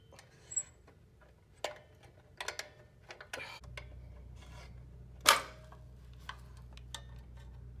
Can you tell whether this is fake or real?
real